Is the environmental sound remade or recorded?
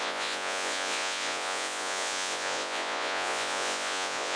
remade